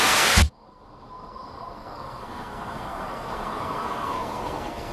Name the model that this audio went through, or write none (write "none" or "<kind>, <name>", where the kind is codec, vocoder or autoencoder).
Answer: codec, SNAC